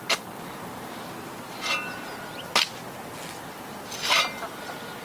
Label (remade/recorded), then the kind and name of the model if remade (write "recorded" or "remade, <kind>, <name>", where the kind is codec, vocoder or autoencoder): recorded